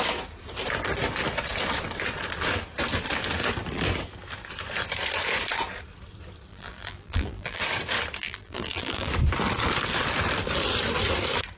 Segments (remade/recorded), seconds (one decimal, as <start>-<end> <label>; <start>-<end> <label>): 0.0-6.5 recorded; 6.5-7.6 remade; 7.6-8.2 recorded; 8.2-9.1 remade; 9.1-11.6 recorded